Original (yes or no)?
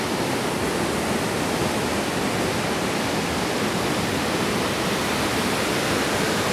yes